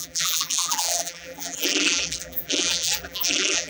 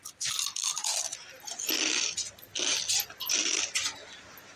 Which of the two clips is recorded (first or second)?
second